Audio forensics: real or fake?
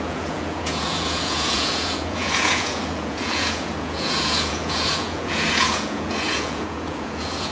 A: fake